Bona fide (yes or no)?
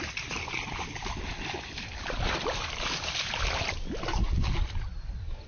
yes